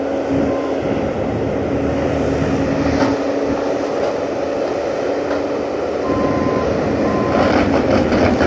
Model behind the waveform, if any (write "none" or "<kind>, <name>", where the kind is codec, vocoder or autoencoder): none